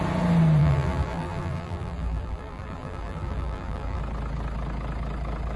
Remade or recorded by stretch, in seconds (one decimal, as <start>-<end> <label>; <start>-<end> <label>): 0.0-0.6 recorded; 0.6-4.0 remade; 4.0-5.6 recorded